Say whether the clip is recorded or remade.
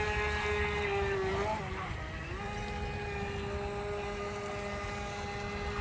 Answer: recorded